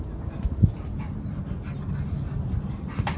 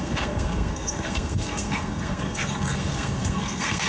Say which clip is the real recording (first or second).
first